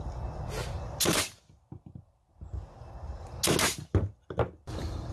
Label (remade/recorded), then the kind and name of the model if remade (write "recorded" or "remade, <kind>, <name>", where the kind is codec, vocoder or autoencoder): recorded